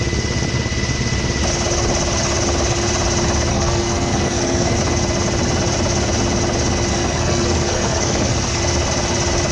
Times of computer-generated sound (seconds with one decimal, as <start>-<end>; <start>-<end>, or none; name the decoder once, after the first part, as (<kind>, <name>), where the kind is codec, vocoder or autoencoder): 3.5-4.8 (codec, SNAC); 6.9-8.6

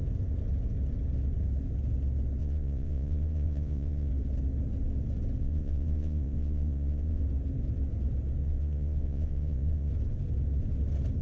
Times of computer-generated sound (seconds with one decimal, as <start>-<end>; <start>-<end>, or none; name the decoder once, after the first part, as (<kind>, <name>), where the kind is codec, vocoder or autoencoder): 2.4-4.1 (vocoder, Vocos); 5.4-7.2; 8.4-9.9